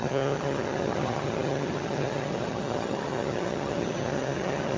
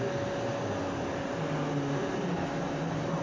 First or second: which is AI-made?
first